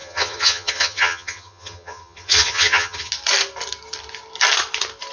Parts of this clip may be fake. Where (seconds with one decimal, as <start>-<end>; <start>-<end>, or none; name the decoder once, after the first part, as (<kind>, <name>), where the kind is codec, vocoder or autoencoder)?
0.0-3.1 (vocoder, HiFi-GAN)